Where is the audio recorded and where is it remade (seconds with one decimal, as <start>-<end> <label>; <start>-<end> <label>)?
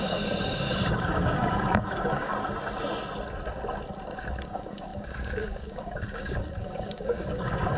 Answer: 0.0-2.3 remade; 2.3-4.4 recorded; 4.4-7.8 remade